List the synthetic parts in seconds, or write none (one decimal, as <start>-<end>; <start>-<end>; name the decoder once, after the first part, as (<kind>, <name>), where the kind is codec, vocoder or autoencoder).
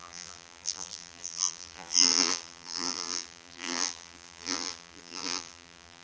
0.0-6.0 (vocoder, BigVGAN v2)